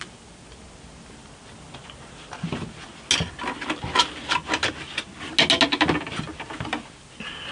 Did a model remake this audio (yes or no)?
no